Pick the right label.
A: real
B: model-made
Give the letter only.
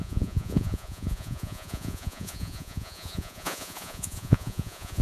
B